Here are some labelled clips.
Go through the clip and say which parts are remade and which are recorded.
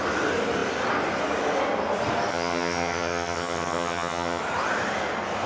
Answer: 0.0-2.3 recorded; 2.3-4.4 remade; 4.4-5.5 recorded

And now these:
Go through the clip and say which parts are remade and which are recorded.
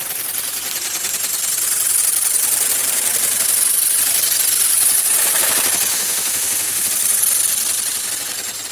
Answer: 0.0-5.9 recorded; 5.9-6.9 remade; 6.9-8.7 recorded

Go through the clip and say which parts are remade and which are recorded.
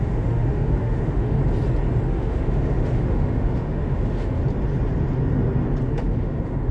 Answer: 0.0-1.4 remade; 1.4-2.1 recorded; 2.1-4.4 remade; 4.4-5.9 recorded; 5.9-6.7 remade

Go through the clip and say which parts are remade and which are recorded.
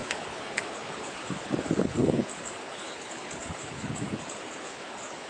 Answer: 0.0-5.3 remade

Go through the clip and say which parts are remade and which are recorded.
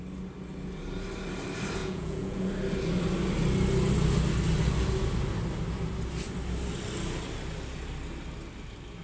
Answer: 0.0-1.8 recorded; 1.8-2.5 remade; 2.5-9.0 recorded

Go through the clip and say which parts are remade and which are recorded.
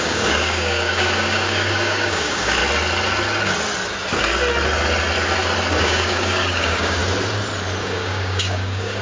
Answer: 0.0-2.6 remade; 2.6-5.7 recorded; 5.7-7.0 remade; 7.0-7.8 recorded; 7.8-9.0 remade